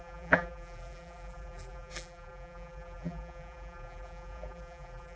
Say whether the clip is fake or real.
fake